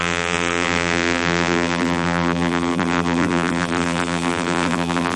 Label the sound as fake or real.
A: fake